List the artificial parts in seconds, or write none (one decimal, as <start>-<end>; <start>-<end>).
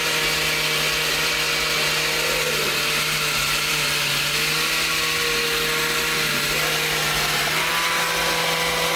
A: none